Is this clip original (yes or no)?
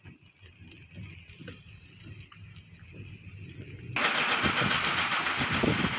yes